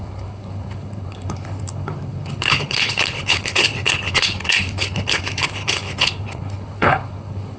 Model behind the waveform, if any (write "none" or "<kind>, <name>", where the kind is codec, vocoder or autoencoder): codec, HILCodec